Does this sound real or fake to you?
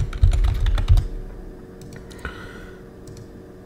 real